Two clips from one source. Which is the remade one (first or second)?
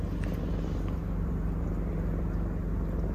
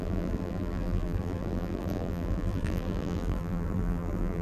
second